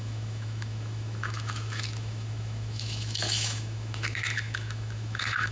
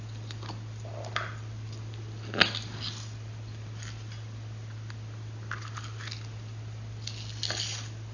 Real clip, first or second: second